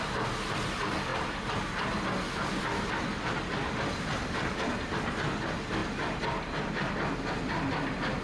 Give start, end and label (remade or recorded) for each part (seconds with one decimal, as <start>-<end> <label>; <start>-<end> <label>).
0.0-8.2 recorded